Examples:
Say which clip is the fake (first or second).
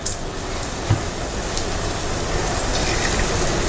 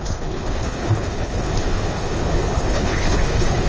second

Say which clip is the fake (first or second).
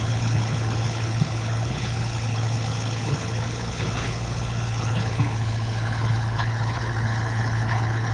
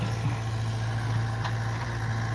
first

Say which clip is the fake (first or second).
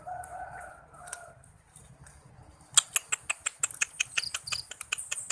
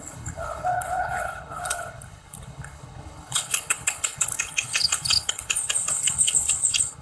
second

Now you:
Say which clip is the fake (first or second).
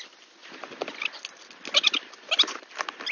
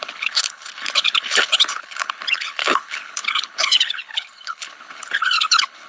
second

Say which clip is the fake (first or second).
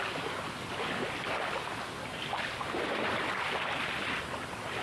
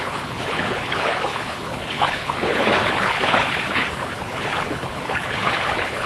second